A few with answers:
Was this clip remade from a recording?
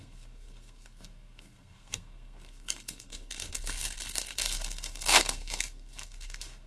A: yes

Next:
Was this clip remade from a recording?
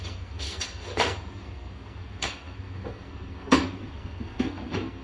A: yes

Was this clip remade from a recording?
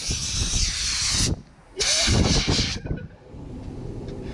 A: no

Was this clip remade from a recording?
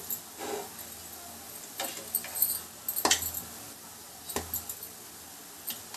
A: no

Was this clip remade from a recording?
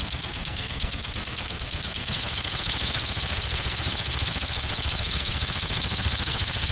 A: yes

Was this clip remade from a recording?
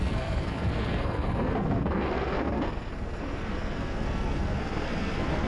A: yes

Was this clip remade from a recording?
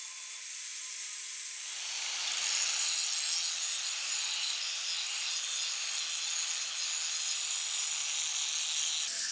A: no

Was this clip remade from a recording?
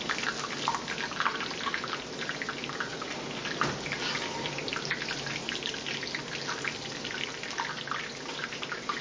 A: no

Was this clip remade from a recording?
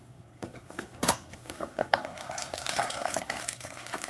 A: yes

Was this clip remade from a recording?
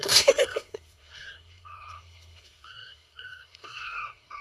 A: yes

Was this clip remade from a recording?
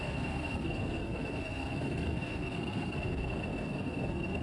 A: yes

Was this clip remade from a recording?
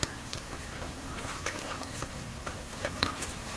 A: yes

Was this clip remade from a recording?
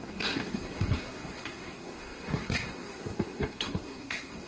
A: yes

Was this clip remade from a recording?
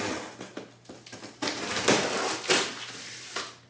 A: no